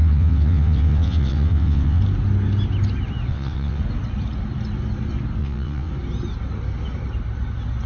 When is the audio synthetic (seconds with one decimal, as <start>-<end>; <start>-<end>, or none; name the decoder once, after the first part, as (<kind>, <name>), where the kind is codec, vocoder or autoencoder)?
0.0-2.0 (vocoder, WaveNeXt); 3.3-3.8; 5.4-5.9